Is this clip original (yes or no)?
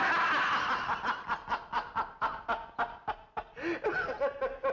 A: yes